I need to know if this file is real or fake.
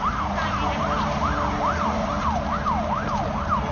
real